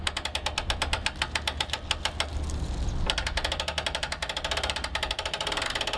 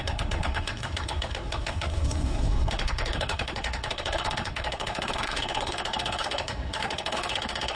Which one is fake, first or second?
second